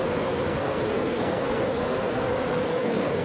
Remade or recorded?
remade